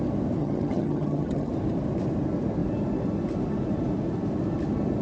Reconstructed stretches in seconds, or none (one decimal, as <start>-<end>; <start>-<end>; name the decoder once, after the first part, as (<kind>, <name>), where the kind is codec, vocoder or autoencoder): 0.4-1.5 (vocoder, HiFi-GAN)